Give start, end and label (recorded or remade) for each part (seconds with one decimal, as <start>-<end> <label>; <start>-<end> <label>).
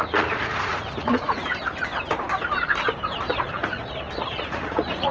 0.0-1.4 remade; 1.4-3.3 recorded; 3.3-5.1 remade